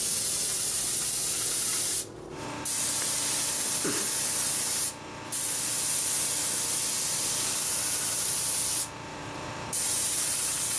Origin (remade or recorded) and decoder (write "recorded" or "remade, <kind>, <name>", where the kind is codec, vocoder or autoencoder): recorded